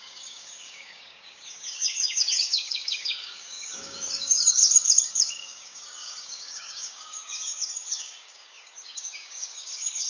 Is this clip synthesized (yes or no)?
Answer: yes